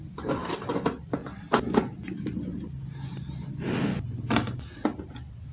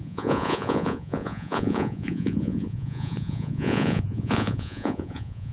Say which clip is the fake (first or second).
second